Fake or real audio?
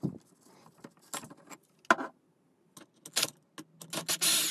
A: real